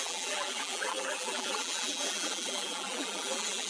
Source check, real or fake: fake